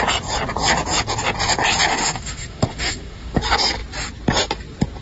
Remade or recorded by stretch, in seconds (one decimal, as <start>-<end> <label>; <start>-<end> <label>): 0.0-1.9 recorded; 1.9-3.4 remade; 3.4-5.0 recorded